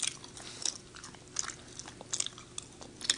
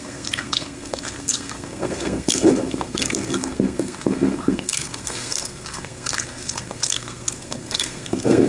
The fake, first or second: second